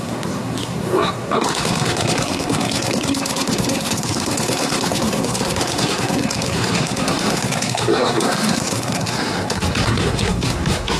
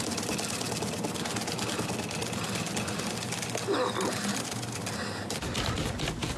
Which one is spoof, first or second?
first